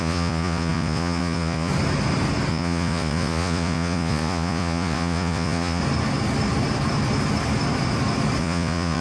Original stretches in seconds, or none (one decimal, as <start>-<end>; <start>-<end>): 1.7-2.5; 5.8-8.4